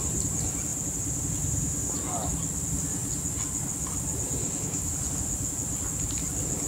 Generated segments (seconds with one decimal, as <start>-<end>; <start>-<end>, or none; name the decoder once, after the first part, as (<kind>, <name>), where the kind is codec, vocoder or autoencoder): 4.4-4.9 (codec, DAC)